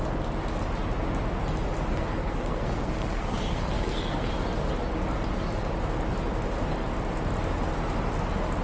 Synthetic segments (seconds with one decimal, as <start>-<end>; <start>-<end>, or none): 1.9-4.3